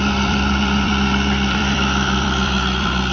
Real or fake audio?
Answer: fake